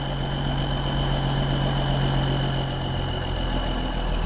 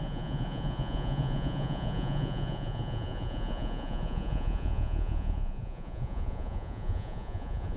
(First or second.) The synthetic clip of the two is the second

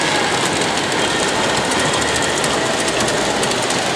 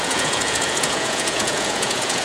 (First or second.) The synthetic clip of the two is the second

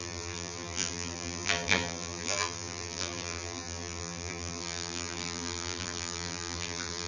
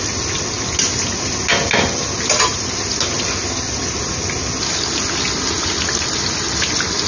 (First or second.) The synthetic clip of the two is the first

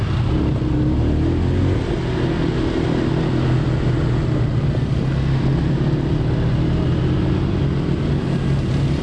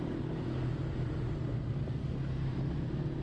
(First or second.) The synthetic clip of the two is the second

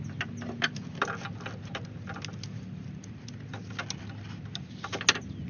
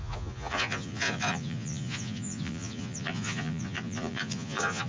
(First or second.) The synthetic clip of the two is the second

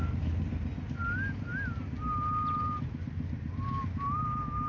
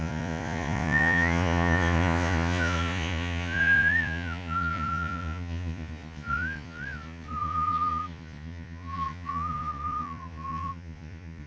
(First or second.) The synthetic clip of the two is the second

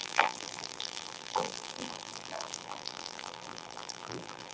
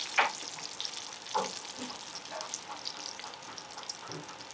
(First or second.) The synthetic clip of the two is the first